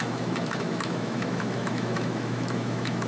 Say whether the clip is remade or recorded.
remade